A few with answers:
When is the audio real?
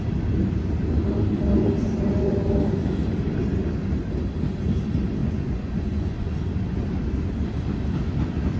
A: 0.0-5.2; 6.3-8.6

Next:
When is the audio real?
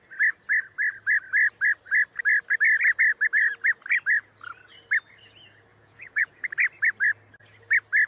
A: 0.0-5.7; 6.5-8.1